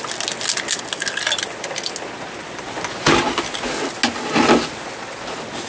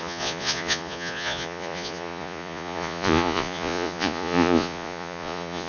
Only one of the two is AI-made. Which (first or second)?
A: second